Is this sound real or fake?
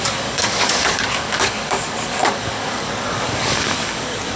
fake